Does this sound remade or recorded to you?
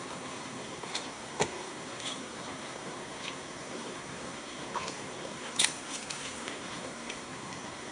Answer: remade